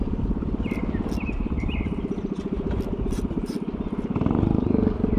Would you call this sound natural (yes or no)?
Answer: yes